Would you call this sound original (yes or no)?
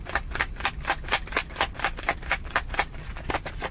yes